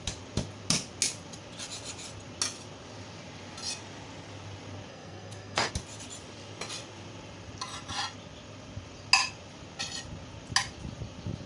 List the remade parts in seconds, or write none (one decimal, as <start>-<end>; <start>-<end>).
4.9-5.7